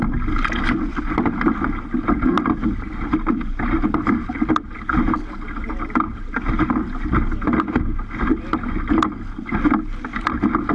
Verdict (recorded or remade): recorded